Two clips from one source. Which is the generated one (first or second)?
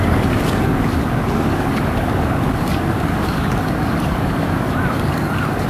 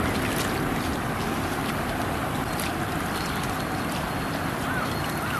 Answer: first